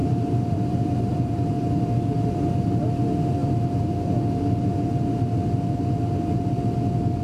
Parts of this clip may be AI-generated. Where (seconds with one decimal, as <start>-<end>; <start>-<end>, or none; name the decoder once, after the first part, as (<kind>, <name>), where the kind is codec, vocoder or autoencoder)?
0.0-1.4 (vocoder, BigVGAN v2)